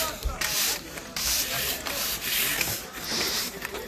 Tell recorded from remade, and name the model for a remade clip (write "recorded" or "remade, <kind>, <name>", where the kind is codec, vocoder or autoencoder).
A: remade, vocoder, BigVGAN v2